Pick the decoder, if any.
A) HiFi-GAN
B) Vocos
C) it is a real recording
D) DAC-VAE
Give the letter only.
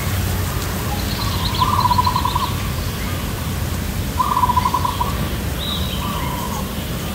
C